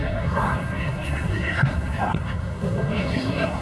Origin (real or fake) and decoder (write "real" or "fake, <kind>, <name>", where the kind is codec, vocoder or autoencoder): fake, codec, SNAC